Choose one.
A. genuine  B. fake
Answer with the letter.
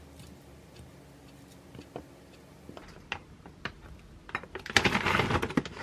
A